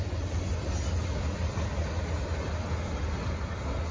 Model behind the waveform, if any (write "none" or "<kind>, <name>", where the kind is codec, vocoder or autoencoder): none